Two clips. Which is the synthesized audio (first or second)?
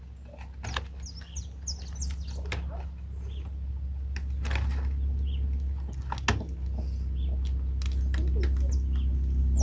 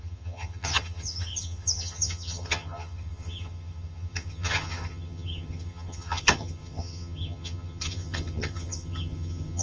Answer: second